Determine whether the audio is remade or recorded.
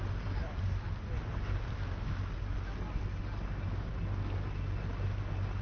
recorded